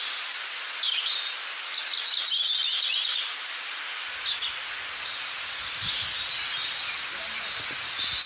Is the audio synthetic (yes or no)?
no